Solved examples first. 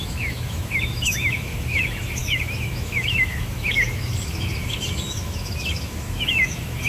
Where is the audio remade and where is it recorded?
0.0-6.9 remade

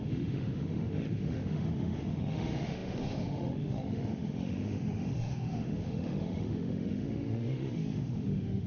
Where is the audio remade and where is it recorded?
0.0-8.7 remade

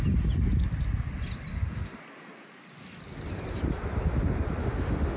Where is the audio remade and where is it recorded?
0.0-1.5 recorded; 1.5-2.0 remade; 2.0-4.6 recorded; 4.6-5.2 remade